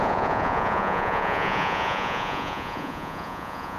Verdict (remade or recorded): remade